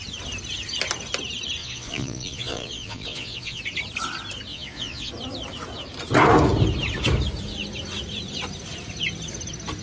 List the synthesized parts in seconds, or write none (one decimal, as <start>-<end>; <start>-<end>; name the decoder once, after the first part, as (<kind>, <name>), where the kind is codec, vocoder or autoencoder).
1.6-3.6 (vocoder, Vocos); 4.5-5.1